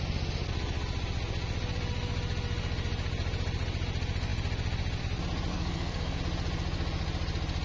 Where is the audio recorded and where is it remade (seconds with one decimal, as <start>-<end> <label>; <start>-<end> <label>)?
0.0-5.5 recorded; 5.5-6.2 remade; 6.2-7.6 recorded